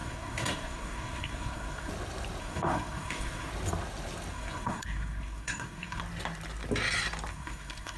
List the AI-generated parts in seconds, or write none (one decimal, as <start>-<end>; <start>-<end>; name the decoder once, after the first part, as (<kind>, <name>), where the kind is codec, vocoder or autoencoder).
0.0-1.9 (codec, SNAC); 2.4-3.5; 4.3-6.0; 7.3-8.0